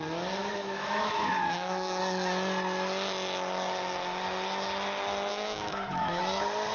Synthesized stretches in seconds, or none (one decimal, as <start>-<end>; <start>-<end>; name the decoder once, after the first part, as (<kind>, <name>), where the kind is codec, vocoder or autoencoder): 0.4-2.0 (autoencoder, DAC-VAE); 5.3-6.2

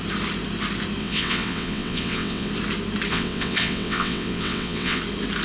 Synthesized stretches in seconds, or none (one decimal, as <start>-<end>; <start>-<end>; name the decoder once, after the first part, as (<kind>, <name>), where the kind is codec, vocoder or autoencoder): 1.0-2.5 (vocoder, WaveNeXt); 3.1-5.0

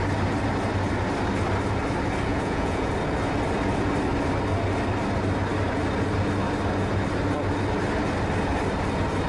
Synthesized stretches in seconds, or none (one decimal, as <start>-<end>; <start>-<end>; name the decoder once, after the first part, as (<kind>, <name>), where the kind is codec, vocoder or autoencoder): 2.3-2.9 (vocoder, Vocos)

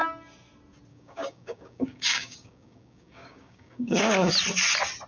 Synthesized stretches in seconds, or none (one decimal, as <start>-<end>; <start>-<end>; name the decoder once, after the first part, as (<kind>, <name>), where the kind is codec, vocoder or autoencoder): 0.9-4.0 (codec, DAC)

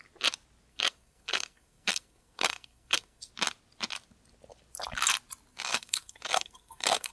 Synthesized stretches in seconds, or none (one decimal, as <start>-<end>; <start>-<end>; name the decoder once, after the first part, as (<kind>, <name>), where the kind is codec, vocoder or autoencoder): 0.7-3.3 (codec, SNAC); 5.5-7.1

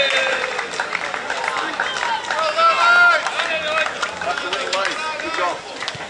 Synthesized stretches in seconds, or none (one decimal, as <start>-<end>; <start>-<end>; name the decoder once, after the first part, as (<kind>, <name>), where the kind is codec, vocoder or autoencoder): none

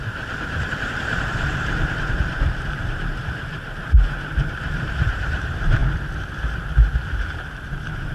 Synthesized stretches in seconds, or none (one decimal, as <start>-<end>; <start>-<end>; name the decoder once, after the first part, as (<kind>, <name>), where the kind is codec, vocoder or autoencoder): 0.0-8.1 (vocoder, BigVGAN v2)

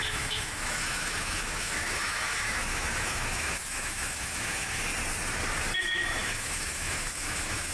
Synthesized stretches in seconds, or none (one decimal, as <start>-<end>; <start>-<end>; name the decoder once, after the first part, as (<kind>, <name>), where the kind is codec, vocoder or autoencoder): 0.0-4.9 (autoencoder, DAC-VAE); 5.8-7.7